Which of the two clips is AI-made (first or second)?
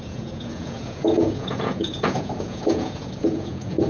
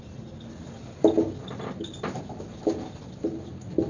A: first